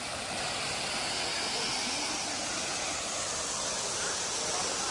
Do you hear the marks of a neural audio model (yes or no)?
no